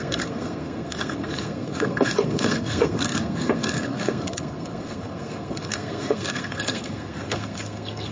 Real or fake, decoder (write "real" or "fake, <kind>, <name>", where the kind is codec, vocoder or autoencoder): fake, codec, SNAC